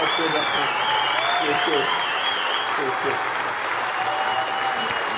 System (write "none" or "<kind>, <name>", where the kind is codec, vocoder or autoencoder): none